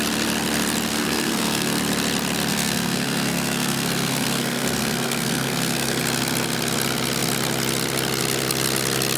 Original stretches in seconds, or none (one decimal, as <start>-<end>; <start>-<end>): 0.0-0.9; 1.8-2.5; 6.0-9.2